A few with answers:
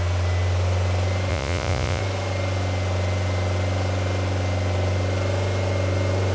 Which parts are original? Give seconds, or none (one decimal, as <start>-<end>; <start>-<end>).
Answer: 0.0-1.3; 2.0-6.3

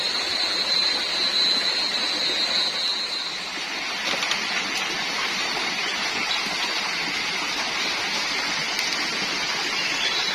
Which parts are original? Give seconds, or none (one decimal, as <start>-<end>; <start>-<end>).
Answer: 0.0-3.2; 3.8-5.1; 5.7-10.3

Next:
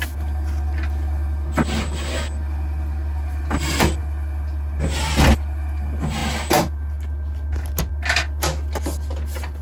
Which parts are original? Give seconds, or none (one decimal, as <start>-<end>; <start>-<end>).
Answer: 0.0-9.6